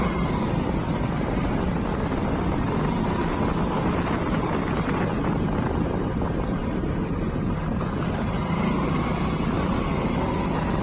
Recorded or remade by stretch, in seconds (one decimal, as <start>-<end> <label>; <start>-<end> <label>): 0.0-10.8 recorded